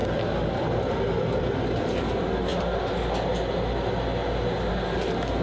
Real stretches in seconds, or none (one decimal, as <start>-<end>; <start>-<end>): 0.0-5.4